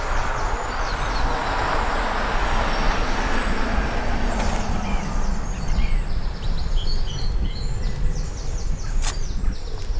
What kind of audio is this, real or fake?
real